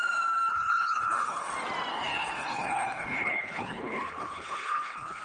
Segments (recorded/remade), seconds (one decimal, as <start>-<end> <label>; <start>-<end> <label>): 0.0-0.5 recorded; 0.5-1.5 remade; 1.5-1.9 recorded; 1.9-5.2 remade